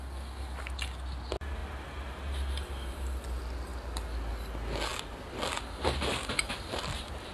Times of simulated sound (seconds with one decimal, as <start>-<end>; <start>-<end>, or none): 4.9-7.3